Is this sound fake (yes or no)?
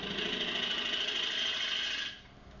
no